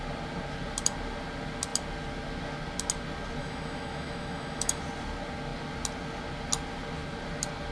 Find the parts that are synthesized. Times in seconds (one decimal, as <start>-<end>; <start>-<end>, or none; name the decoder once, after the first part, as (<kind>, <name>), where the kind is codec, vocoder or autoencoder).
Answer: 3.4-4.8 (autoencoder, DAC-VAE)